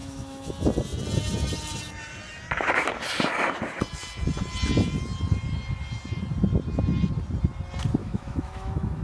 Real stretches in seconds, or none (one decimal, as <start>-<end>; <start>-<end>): 0.5-8.0

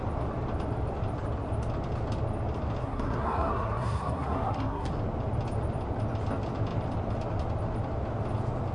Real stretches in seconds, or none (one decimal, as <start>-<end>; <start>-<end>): 0.0-2.8; 4.9-8.7

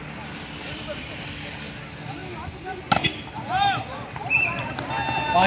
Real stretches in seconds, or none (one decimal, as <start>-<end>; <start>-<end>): 0.0-5.5